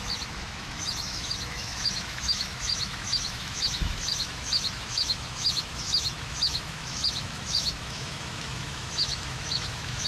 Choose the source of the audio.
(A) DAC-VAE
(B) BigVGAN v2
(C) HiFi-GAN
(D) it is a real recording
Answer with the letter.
A